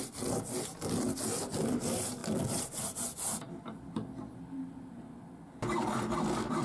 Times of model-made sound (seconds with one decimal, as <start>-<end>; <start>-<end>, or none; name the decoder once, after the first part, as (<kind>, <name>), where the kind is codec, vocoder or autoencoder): none